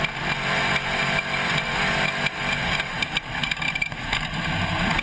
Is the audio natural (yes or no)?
yes